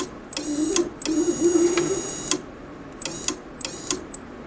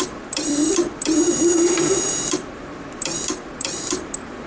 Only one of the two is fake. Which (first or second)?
second